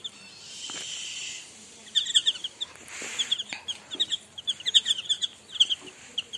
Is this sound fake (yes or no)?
no